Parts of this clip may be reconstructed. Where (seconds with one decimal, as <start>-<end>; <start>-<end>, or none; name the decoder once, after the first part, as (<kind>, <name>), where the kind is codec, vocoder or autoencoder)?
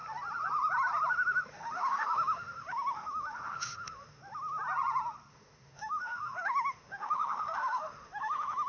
1.5-4.2 (autoencoder, DAC-VAE); 5.3-8.7